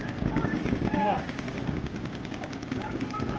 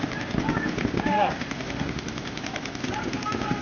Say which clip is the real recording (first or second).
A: second